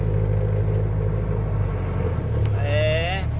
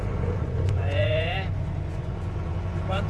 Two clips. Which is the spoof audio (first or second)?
second